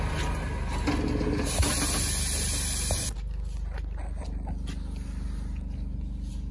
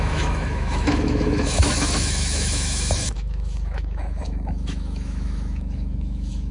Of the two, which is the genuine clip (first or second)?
first